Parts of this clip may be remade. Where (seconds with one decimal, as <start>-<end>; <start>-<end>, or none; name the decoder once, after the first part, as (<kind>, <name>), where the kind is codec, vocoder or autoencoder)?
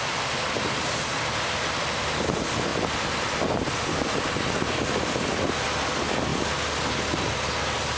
none